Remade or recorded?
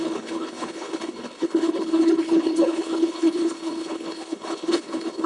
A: remade